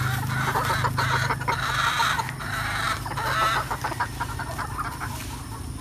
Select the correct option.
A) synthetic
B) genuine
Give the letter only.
B